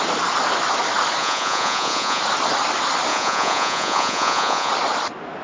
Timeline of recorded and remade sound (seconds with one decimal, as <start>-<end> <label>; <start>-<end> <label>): 0.0-1.2 recorded; 1.2-2.2 remade; 2.2-3.1 recorded; 3.1-4.7 remade; 4.7-5.4 recorded